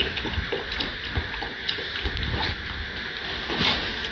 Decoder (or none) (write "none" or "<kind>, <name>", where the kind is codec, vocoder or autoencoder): none